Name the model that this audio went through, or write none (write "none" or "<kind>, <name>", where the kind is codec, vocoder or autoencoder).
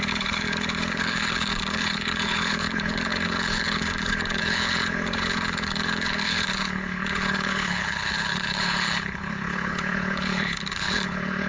codec, HILCodec